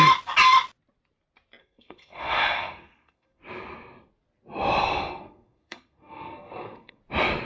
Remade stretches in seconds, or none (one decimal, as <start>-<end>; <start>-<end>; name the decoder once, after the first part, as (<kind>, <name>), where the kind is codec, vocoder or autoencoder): 1.6-3.4 (codec, SNAC); 4.8-7.0